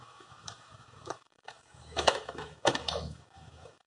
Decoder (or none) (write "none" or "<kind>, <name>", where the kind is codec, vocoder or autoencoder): autoencoder, DAC-VAE